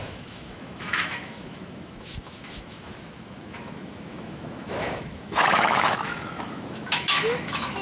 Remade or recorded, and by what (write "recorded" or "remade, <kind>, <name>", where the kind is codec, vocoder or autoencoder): remade, autoencoder, DAC-VAE